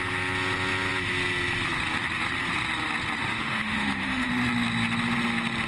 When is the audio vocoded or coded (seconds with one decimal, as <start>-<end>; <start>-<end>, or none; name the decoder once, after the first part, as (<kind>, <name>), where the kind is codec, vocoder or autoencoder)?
3.2-4.3 (autoencoder, DAC-VAE)